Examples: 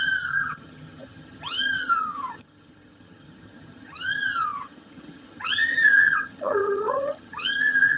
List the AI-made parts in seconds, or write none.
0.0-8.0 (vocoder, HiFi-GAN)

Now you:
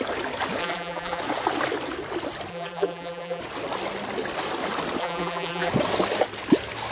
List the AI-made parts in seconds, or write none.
0.6-1.2 (vocoder, BigVGAN v2); 2.5-3.4; 5.0-5.7

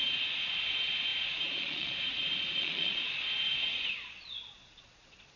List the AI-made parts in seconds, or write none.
0.0-5.4 (vocoder, Vocos)